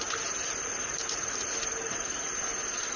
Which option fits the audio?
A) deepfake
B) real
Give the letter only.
B